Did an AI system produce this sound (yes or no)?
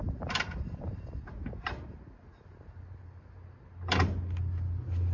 no